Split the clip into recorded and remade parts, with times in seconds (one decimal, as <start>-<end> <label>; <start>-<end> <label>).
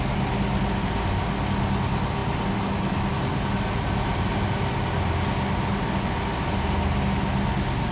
0.0-7.9 recorded